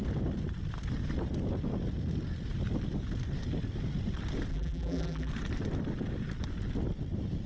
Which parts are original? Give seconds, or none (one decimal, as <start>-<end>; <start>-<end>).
0.0-4.5; 5.3-7.5